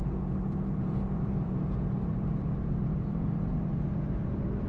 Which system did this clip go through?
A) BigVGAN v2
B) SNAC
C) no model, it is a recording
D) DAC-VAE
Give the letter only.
A